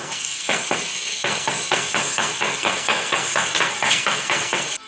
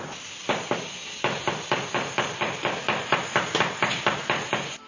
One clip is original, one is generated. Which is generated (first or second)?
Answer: first